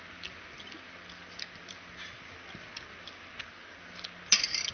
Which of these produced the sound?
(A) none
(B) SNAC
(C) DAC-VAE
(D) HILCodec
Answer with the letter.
A